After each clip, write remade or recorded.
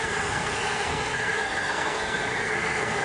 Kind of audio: remade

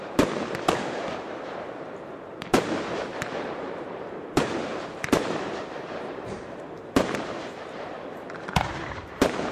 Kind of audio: remade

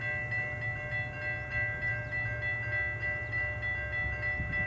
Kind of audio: recorded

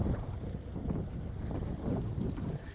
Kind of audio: recorded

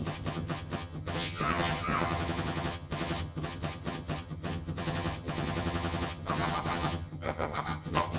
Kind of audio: remade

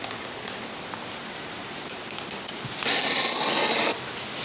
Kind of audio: recorded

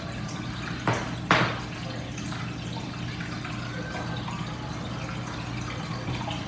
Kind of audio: recorded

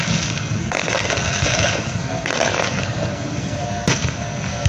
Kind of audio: remade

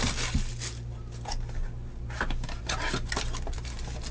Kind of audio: recorded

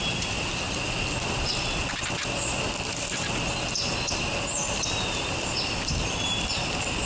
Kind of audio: recorded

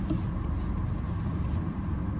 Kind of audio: recorded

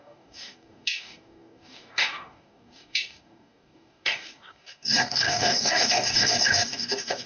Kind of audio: remade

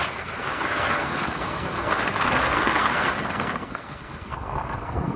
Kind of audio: remade